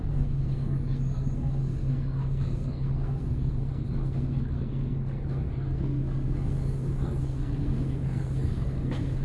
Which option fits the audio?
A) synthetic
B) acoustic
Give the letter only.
A